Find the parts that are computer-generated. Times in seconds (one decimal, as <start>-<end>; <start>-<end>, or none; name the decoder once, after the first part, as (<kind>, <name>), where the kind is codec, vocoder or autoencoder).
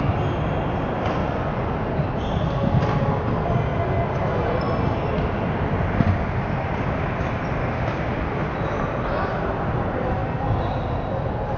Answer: 1.2-1.8 (vocoder, Vocos)